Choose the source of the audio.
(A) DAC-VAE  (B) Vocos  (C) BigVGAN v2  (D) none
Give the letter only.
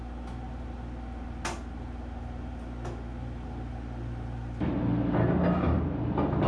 D